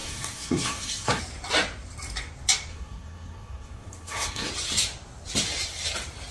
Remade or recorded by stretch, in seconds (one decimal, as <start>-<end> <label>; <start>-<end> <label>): 0.0-1.2 remade; 1.2-2.7 recorded; 2.7-4.5 remade; 4.5-6.3 recorded

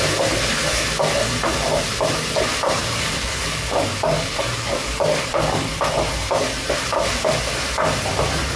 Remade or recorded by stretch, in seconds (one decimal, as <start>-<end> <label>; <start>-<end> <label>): 0.0-2.8 recorded; 2.8-5.7 remade; 5.7-8.6 recorded

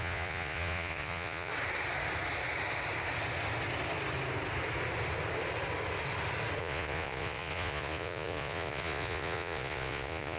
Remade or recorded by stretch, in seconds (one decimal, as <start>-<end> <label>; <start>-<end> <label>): 0.0-1.5 remade; 1.5-6.6 recorded; 6.6-10.4 remade

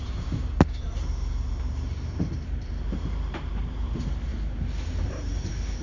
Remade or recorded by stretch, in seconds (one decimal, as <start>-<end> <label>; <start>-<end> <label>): 0.0-4.3 remade; 4.3-5.0 recorded; 5.0-5.8 remade

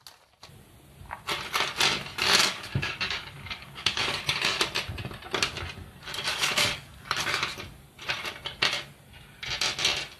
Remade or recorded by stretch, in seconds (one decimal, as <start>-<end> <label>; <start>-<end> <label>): 0.0-2.4 recorded; 2.4-4.6 remade; 4.6-6.3 recorded; 6.3-7.4 remade; 7.4-10.2 recorded

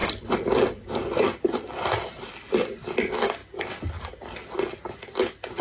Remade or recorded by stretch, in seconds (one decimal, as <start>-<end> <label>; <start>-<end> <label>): 0.0-5.6 recorded

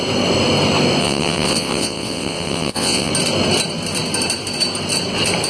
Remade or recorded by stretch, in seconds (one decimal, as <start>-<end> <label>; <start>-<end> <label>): 0.0-1.0 recorded; 1.0-3.1 remade; 3.1-5.5 recorded